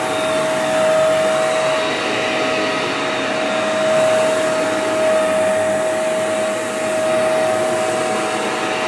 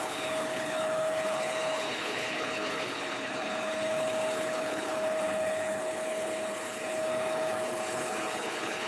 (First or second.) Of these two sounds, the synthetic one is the second